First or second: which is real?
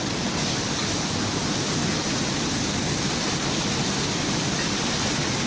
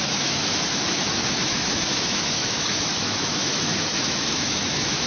first